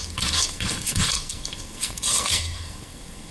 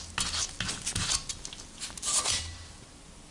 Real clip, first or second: second